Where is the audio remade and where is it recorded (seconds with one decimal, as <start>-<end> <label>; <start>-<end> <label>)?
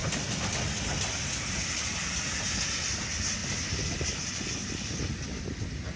0.0-6.0 recorded